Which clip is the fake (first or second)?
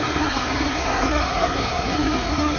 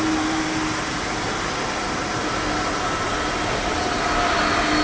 first